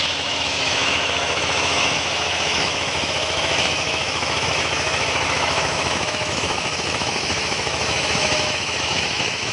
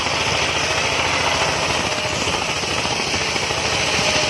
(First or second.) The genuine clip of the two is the second